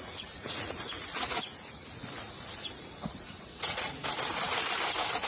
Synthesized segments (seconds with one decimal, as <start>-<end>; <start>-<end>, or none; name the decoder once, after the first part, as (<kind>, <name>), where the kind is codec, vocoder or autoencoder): 0.0-4.0 (vocoder, Vocos)